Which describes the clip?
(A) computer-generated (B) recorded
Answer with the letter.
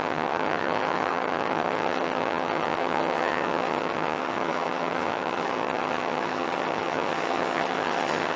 A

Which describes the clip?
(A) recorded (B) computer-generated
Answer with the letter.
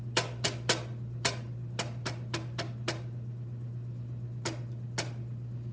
A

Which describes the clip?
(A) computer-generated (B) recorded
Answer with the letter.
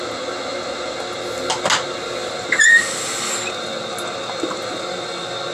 B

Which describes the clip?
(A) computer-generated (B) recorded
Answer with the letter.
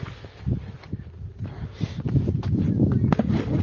B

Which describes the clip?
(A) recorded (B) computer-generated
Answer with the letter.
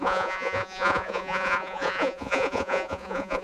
B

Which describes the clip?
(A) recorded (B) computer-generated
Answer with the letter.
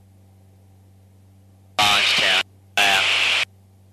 A